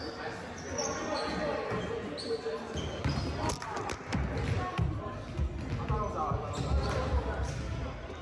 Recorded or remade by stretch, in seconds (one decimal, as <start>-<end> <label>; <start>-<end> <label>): 0.0-8.2 recorded